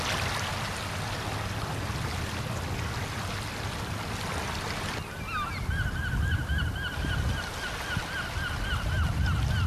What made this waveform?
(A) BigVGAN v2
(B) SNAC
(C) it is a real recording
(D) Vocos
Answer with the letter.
C